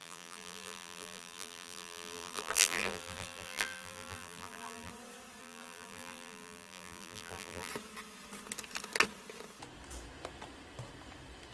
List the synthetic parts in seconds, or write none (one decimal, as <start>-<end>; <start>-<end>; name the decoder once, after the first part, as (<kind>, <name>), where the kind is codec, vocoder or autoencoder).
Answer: 0.0-4.9 (vocoder, BigVGAN v2); 5.4-7.7